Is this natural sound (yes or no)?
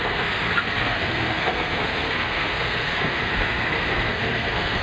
no